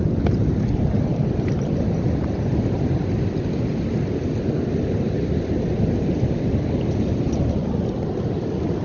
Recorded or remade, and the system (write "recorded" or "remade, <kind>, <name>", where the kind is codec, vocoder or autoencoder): recorded